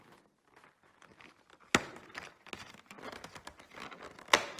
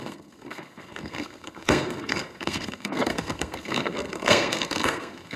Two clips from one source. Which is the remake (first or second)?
second